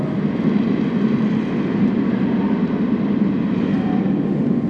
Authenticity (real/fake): real